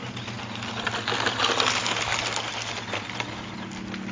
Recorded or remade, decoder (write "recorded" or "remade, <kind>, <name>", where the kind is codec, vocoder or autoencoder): recorded